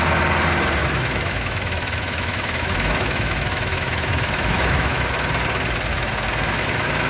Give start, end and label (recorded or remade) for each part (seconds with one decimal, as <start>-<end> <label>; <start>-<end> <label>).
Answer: 0.0-0.8 recorded; 0.8-5.1 remade; 5.1-5.9 recorded; 5.9-7.1 remade